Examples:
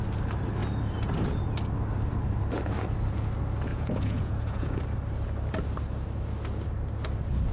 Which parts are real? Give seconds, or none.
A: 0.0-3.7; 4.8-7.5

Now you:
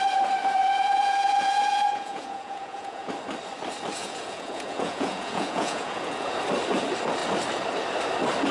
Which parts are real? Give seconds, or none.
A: 0.0-0.6; 3.1-4.0; 6.3-8.5

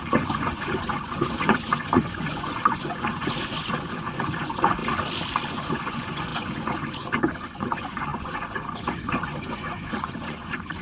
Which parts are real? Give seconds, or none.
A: 4.8-5.5

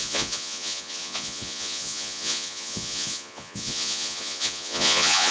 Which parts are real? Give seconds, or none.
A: none

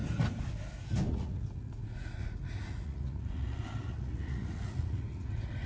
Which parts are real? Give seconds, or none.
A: 0.0-1.1